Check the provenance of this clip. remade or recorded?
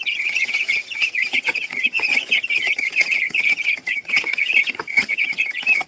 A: remade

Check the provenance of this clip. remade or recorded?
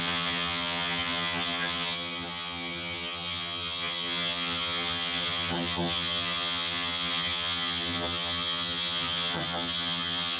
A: remade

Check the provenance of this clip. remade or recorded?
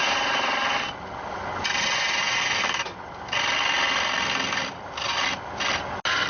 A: recorded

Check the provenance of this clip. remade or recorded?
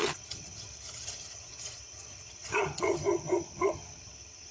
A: remade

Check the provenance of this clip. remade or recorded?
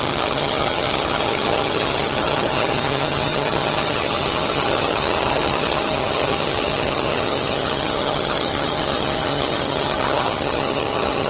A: remade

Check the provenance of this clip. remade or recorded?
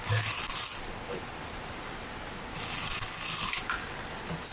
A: recorded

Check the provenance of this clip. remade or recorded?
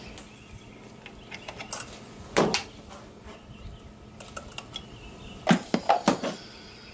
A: recorded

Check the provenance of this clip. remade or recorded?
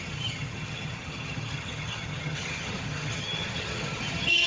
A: remade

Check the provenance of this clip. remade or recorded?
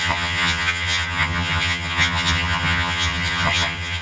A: remade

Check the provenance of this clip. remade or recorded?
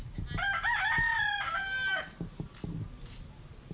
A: recorded